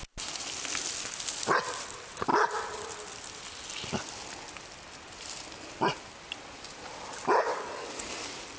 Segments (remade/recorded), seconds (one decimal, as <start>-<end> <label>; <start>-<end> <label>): 0.0-7.5 recorded; 7.5-8.1 remade; 8.1-8.6 recorded